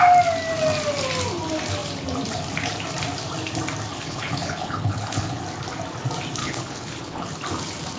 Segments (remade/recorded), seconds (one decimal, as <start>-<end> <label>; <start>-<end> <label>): 0.0-3.9 recorded; 3.9-5.4 remade; 5.4-6.4 recorded; 6.4-7.3 remade; 7.3-8.0 recorded